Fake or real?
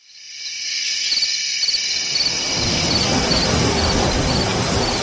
real